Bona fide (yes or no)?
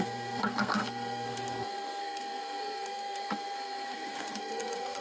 no